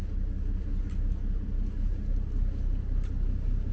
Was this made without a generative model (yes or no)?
yes